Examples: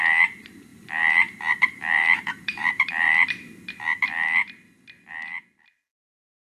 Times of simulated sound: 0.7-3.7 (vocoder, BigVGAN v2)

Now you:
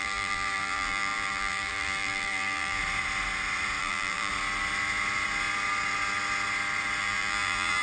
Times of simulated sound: 0.0-2.8 (vocoder, BigVGAN v2); 3.8-4.3; 7.0-7.8

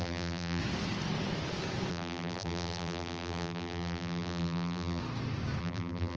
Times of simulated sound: 0.0-0.6 (vocoder, BigVGAN v2); 1.9-5.0; 5.6-6.2

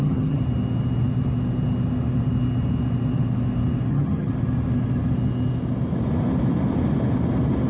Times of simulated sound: 0.0-0.4 (vocoder, HiFi-GAN); 3.9-4.3

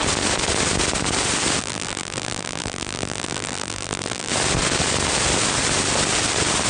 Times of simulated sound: 1.6-4.3 (vocoder, BigVGAN v2)